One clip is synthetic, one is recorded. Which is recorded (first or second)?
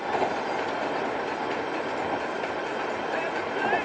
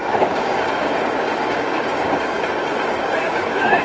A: first